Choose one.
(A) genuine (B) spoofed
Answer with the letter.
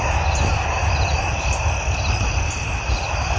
A